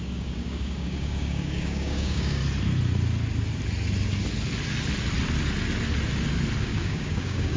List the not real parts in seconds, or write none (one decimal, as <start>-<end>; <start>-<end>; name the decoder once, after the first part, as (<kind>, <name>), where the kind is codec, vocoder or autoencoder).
0.0-2.4 (codec, DAC); 6.6-7.6